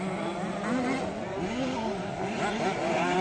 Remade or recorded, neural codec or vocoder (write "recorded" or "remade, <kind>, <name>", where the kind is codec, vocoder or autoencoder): recorded